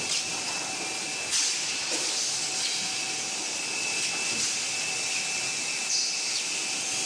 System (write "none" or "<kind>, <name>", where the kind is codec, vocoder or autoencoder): none